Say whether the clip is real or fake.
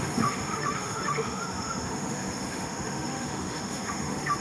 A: fake